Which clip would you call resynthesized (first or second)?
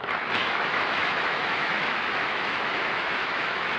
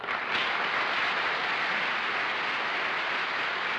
first